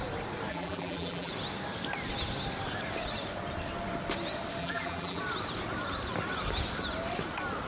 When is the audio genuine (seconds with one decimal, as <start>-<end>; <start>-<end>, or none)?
0.0-0.5; 1.3-4.6; 5.2-7.7